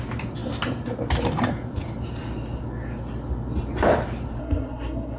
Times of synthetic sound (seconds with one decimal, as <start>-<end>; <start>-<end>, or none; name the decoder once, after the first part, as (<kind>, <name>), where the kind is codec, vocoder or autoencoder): 4.4-5.2 (codec, SNAC)